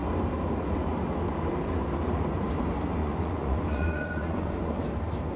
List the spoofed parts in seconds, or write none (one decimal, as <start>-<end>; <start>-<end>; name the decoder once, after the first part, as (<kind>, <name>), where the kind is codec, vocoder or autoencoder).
3.0-4.7 (vocoder, Vocos)